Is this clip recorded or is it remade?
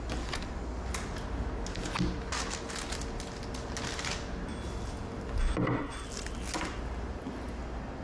recorded